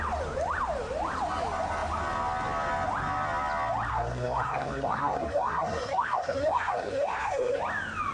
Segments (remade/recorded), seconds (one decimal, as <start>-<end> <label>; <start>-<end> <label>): 0.0-3.9 recorded; 3.9-7.6 remade; 7.6-8.1 recorded